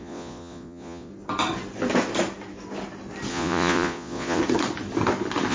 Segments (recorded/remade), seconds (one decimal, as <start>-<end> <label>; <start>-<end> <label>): 0.0-1.1 remade; 1.1-3.3 recorded; 3.3-4.4 remade; 4.4-5.5 recorded

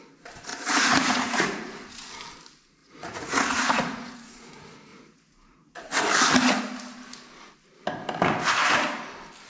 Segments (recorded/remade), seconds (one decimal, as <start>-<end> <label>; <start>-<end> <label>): 0.0-0.5 recorded; 0.5-2.1 remade; 2.1-2.8 recorded; 2.8-4.5 remade; 4.5-4.9 recorded; 4.9-6.0 remade; 6.0-9.5 recorded